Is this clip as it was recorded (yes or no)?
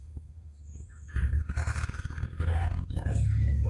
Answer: no